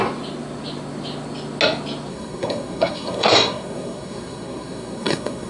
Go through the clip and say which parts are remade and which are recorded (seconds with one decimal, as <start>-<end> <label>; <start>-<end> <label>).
0.0-2.1 recorded; 2.1-5.5 remade